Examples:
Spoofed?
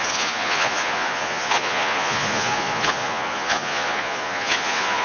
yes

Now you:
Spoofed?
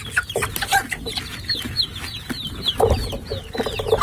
no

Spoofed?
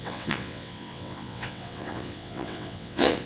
yes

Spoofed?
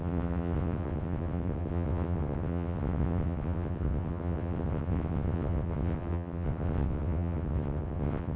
yes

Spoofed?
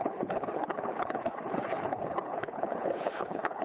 yes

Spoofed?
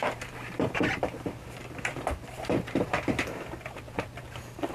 yes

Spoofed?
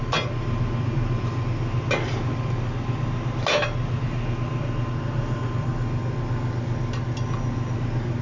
no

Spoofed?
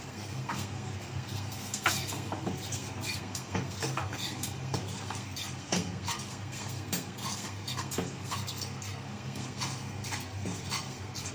yes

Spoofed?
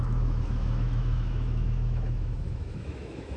yes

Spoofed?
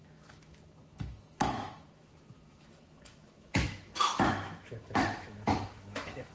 yes